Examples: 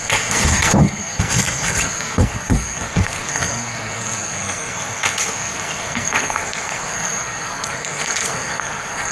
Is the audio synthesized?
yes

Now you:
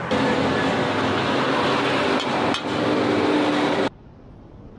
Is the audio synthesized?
no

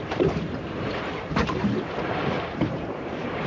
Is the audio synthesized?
yes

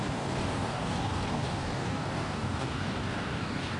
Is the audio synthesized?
yes